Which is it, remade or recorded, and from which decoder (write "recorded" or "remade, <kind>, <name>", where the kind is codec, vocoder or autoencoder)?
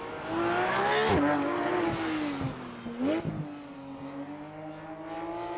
recorded